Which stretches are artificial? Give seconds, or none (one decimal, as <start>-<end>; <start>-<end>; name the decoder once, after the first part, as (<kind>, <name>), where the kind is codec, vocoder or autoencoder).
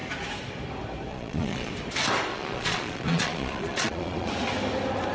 1.1-1.7 (vocoder, Vocos); 2.3-4.3